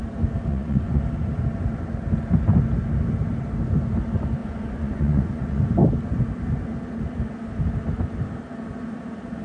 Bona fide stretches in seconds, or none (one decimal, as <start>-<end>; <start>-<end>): 0.0-0.5; 1.0-4.4; 5.6-9.4

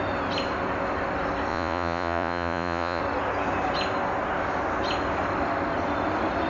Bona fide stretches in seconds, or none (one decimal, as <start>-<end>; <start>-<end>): 0.0-1.5; 3.0-6.5

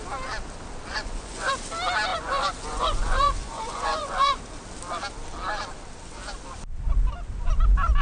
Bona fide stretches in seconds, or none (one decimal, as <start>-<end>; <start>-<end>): 0.0-0.9; 1.5-2.1; 4.4-8.0

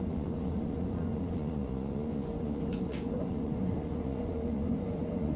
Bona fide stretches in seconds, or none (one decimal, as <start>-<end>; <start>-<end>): none

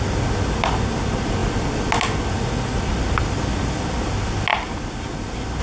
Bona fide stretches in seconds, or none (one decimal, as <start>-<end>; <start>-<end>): 0.0-5.6

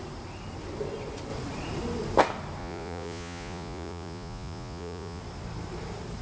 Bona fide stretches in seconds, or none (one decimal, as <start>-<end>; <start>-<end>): 0.0-2.6; 5.2-6.2